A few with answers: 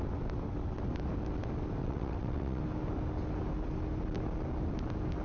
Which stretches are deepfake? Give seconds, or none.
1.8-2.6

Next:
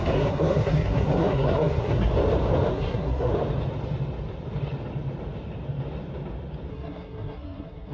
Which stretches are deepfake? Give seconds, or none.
0.0-2.1; 2.7-3.3; 6.7-7.9

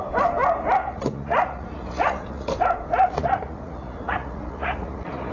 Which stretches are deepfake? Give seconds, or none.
0.8-2.5; 3.0-5.3

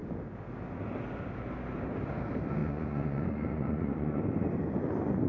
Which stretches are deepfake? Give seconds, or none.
2.6-4.2

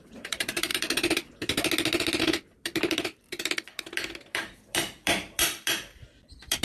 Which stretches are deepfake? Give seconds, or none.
0.0-0.7; 2.2-6.6

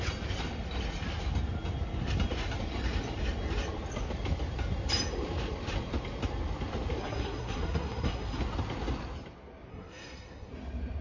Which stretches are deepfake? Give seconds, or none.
7.0-8.4; 9.7-10.5

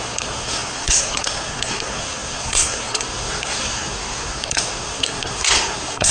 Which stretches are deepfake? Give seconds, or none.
0.0-6.1

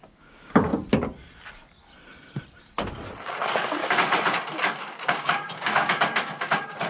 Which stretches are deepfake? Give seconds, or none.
0.0-0.7; 3.2-3.8; 4.7-6.9